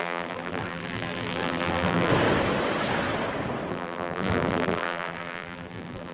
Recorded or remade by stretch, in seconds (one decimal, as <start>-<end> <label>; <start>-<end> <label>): 0.0-2.1 remade; 2.1-3.7 recorded; 3.7-6.1 remade